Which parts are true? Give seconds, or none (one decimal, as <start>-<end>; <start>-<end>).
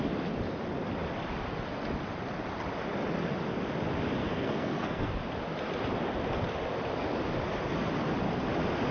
0.0-4.2; 5.2-8.9